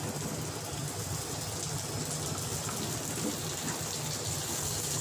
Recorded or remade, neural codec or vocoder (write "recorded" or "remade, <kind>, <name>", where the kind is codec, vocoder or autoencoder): recorded